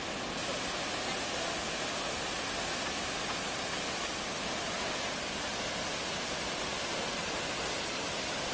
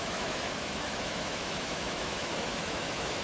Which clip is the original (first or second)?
first